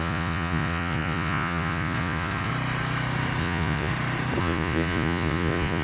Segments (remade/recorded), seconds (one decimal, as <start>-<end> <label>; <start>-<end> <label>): 0.0-2.5 remade; 2.5-3.4 recorded; 3.4-3.9 remade; 3.9-4.4 recorded; 4.4-5.8 remade